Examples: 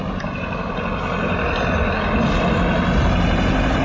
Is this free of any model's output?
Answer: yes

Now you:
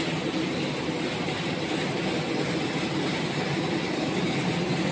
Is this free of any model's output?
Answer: yes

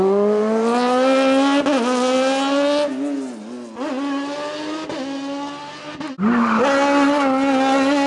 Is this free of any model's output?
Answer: yes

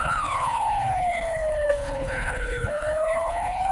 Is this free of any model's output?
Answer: no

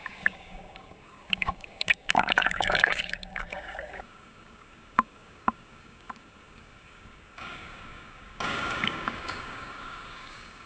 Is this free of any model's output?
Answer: no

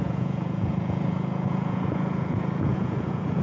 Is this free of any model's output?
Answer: no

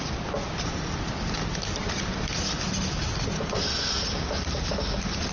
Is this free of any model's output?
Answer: yes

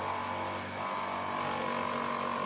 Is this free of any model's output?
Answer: yes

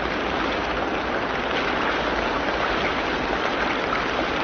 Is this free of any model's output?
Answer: yes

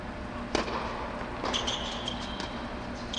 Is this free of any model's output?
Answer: yes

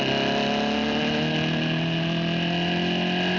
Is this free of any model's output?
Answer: yes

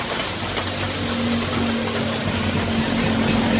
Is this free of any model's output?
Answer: yes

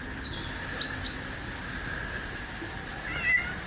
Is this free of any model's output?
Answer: yes